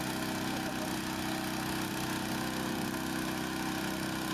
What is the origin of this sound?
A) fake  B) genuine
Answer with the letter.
B